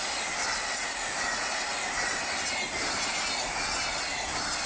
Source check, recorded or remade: recorded